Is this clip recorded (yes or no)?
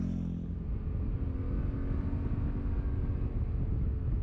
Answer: yes